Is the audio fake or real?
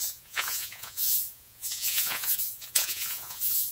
fake